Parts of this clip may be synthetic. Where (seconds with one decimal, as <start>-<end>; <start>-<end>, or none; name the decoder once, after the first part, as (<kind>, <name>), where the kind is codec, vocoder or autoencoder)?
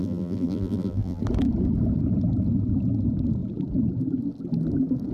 0.0-1.2 (vocoder, BigVGAN v2)